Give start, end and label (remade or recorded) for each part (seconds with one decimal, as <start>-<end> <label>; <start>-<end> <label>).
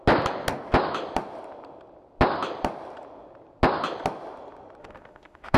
0.0-4.8 recorded; 4.8-5.6 remade